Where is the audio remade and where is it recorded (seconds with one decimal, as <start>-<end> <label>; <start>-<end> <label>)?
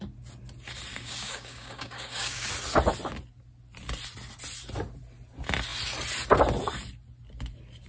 0.0-0.9 recorded; 0.9-2.5 remade; 2.5-7.9 recorded